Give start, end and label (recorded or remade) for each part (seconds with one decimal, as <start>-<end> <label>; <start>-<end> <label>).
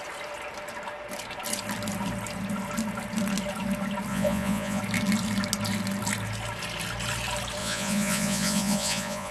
0.0-4.1 recorded; 4.1-4.8 remade; 4.8-7.6 recorded; 7.6-9.3 remade